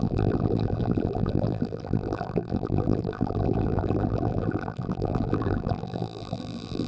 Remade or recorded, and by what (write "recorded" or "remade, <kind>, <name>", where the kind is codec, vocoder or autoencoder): remade, vocoder, BigVGAN v2